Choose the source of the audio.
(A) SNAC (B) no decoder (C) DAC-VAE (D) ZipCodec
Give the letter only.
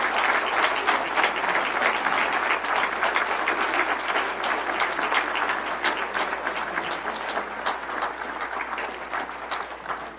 B